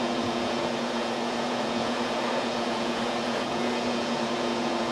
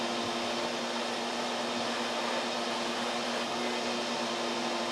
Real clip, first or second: second